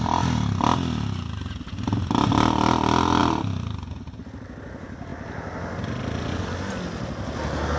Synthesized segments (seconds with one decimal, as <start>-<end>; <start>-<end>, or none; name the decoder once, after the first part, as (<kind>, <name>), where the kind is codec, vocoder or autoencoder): none